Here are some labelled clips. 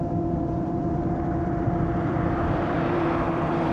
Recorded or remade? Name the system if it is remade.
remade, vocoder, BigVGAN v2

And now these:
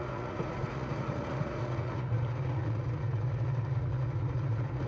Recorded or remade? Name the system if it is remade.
remade, vocoder, Vocos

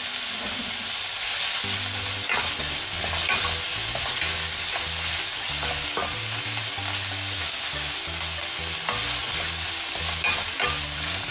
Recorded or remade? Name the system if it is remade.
recorded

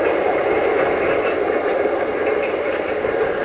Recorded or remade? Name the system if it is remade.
recorded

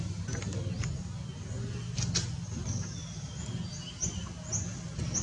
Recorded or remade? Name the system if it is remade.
recorded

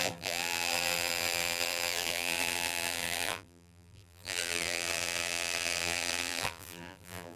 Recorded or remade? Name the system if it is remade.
remade, vocoder, BigVGAN v2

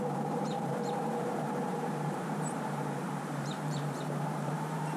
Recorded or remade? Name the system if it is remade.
remade, vocoder, BigVGAN v2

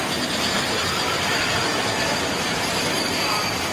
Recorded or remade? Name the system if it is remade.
recorded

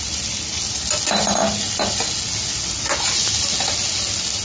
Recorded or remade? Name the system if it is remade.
recorded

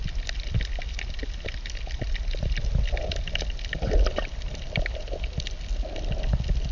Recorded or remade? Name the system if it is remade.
recorded